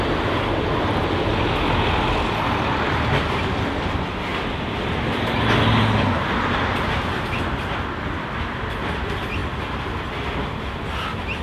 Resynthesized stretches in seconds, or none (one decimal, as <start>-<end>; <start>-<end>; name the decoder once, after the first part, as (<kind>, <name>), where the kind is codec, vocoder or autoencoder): none